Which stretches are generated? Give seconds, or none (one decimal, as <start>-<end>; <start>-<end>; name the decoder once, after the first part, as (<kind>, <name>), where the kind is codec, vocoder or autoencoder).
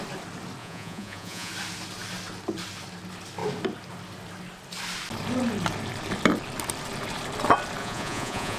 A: 0.6-1.5 (vocoder, Vocos); 7.8-8.6